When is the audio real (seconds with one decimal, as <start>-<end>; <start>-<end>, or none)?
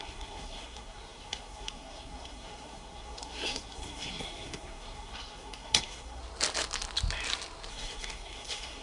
6.2-7.7